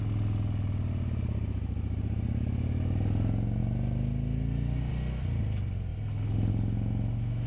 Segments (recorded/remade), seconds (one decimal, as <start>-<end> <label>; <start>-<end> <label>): 0.0-7.5 recorded